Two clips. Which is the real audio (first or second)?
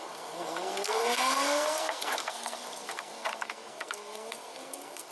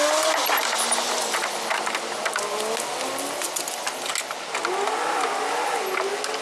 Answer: second